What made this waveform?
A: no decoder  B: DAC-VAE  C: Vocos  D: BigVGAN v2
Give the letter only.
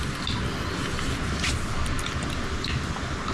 A